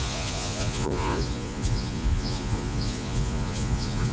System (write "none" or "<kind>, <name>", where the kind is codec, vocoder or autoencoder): vocoder, Vocos